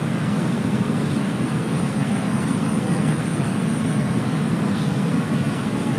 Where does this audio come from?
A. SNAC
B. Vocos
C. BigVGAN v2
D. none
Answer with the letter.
A